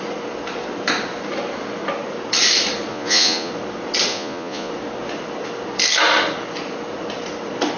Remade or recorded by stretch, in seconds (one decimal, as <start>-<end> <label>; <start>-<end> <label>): 0.0-2.9 recorded; 2.9-3.5 remade; 3.5-4.1 recorded; 4.1-4.7 remade; 4.7-7.8 recorded